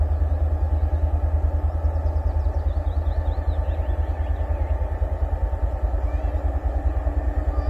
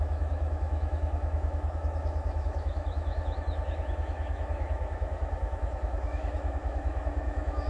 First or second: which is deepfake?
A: second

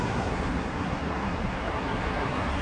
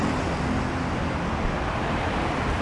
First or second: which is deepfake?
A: first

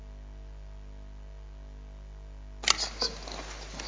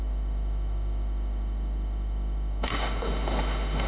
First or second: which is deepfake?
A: second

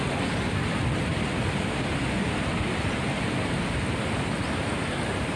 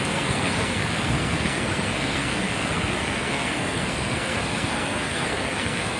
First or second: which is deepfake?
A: second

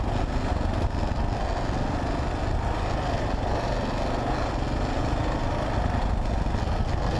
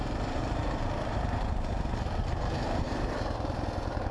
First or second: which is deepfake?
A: second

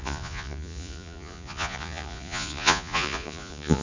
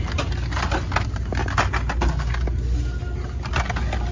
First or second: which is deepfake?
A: first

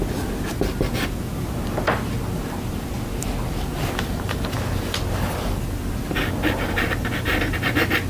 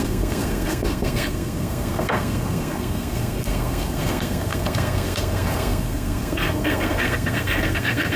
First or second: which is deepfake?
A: second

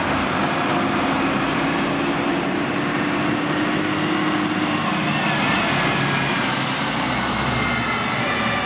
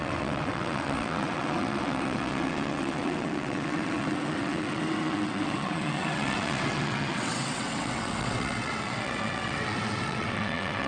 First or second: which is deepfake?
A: second